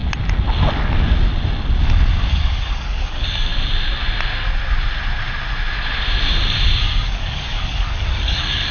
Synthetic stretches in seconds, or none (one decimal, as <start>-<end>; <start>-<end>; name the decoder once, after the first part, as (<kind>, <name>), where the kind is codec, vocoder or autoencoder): 2.3-3.5 (codec, DAC); 6.8-8.7